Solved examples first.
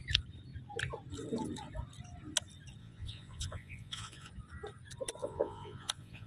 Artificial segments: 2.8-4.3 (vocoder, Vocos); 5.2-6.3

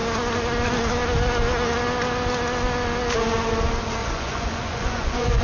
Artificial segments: 4.0-5.4 (vocoder, Vocos)

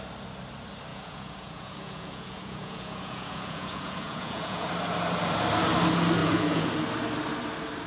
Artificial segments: 0.9-4.7 (vocoder, Vocos); 6.2-6.7

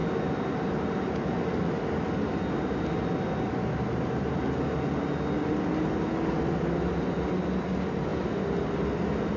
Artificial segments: none

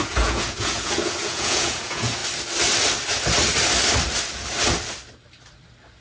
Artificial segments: 0.0-2.2 (vocoder, Vocos)

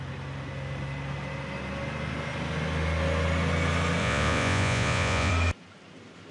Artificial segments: 4.0-5.3 (vocoder, Vocos)

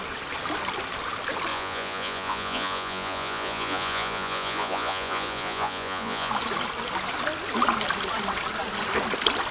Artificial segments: 1.5-6.3 (vocoder, Vocos)